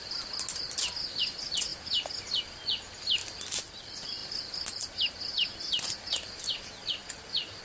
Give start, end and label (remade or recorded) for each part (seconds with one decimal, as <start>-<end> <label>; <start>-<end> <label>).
0.0-3.2 recorded; 3.2-3.8 remade; 3.8-7.6 recorded